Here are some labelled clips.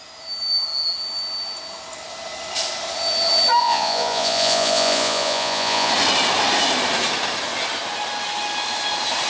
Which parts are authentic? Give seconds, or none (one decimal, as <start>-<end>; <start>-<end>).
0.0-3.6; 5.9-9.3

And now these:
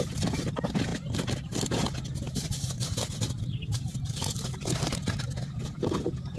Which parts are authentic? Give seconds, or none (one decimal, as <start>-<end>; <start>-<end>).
0.0-6.4

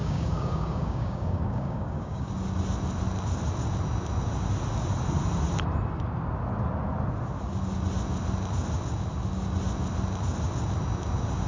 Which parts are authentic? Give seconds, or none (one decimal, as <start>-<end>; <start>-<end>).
2.3-11.5

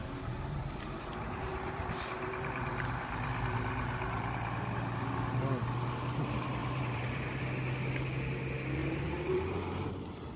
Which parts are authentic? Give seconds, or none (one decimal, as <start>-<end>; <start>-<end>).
4.7-6.6; 7.4-8.8; 9.9-10.4

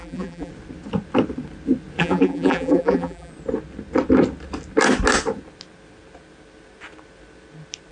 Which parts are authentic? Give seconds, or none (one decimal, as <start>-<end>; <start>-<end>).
0.5-2.0; 3.3-7.9

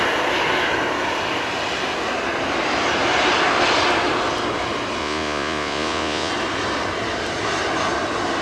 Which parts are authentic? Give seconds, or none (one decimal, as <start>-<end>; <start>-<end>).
0.0-5.0; 6.3-8.4